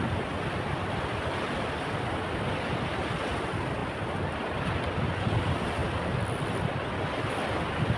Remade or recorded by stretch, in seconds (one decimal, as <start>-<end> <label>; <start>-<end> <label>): 0.0-8.0 recorded